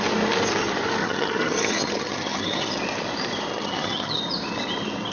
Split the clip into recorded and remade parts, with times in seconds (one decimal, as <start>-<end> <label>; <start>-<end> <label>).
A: 0.0-1.0 recorded; 1.0-2.8 remade; 2.8-3.5 recorded; 3.5-4.2 remade; 4.2-5.1 recorded